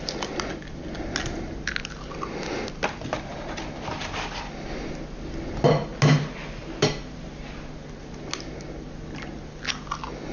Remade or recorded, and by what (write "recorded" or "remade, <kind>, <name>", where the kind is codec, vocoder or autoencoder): recorded